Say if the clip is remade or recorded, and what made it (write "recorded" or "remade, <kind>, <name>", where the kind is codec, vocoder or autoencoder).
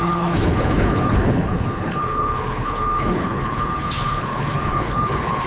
remade, codec, HILCodec